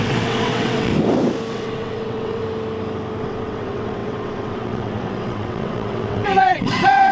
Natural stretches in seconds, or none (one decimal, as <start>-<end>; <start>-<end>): 0.9-1.5; 2.4-3.2